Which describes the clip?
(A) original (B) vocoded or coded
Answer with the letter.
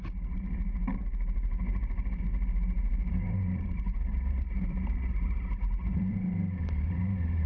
B